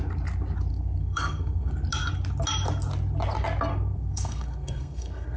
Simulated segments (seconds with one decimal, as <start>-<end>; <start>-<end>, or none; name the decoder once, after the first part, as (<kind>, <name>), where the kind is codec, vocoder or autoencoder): 0.7-1.7 (codec, SNAC); 3.7-5.4